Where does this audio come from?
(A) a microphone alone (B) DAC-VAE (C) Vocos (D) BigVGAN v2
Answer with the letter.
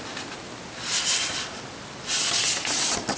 A